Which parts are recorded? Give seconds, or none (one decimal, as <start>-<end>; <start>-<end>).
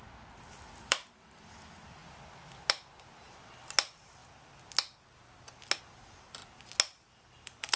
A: 2.0-3.3; 4.2-5.8; 6.4-7.3